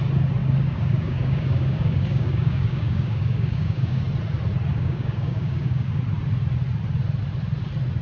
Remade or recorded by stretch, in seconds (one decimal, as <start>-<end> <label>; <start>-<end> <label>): 0.0-0.4 recorded; 0.4-4.0 remade; 4.0-4.7 recorded; 4.7-6.0 remade; 6.0-8.0 recorded